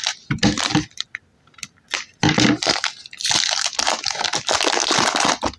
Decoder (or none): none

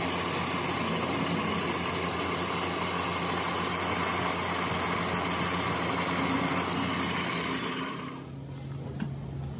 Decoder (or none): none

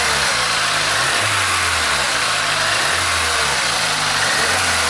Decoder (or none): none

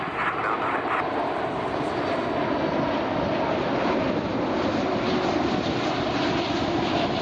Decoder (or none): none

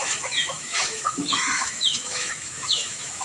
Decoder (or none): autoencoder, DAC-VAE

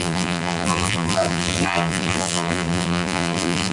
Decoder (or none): vocoder, BigVGAN v2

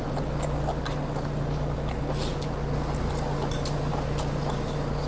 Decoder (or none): none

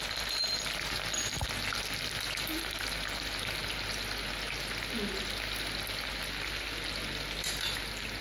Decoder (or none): none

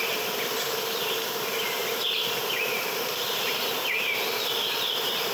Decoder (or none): vocoder, BigVGAN v2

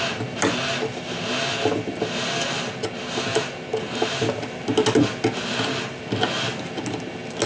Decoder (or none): none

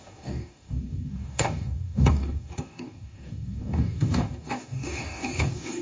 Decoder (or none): codec, DAC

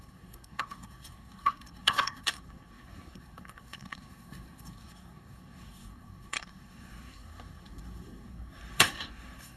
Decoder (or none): codec, SNAC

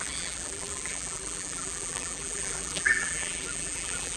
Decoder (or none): vocoder, BigVGAN v2